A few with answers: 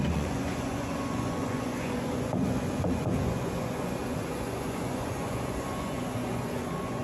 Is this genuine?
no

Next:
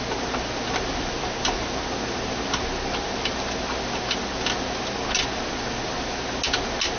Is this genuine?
yes